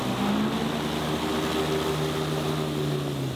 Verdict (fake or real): real